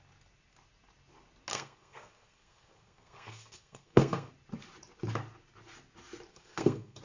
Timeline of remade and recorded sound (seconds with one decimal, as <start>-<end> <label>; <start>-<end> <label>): 0.0-1.5 recorded; 1.5-4.3 remade; 4.3-6.3 recorded; 6.3-7.0 remade